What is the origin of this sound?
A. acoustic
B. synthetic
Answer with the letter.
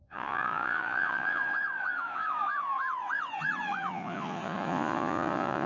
B